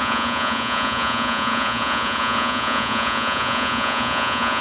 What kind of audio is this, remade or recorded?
remade